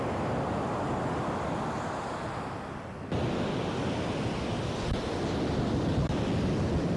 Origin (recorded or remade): recorded